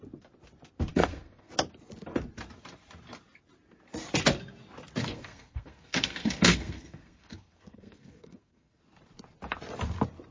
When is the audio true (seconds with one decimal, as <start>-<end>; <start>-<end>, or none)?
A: 0.0-0.9; 1.5-5.0; 8.8-10.3